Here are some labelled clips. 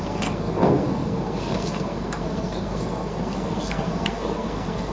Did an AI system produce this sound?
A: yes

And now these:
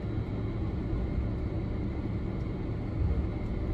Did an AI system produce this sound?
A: no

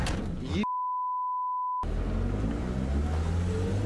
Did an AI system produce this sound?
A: no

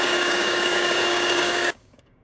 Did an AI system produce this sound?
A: yes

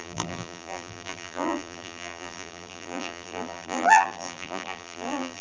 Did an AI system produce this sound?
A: yes